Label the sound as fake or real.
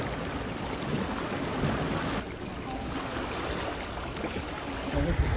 real